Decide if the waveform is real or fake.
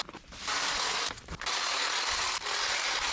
real